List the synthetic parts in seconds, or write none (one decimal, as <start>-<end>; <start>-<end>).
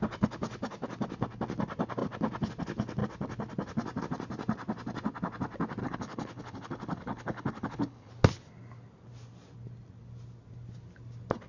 5.8-8.1